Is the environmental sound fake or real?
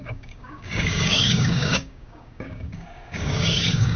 fake